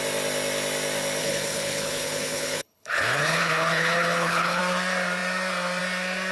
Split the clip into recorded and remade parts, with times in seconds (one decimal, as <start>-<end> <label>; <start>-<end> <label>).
0.0-1.2 recorded; 1.2-4.6 remade; 4.6-6.3 recorded

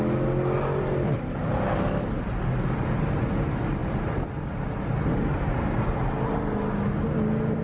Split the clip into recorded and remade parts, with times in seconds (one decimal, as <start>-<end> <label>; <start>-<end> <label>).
0.0-7.6 recorded